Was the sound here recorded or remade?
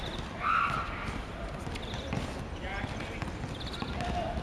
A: remade